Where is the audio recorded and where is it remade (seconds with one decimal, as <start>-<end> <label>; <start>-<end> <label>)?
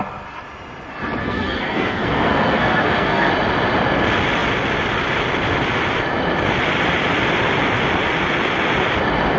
0.0-1.2 recorded; 1.2-3.3 remade; 3.3-9.4 recorded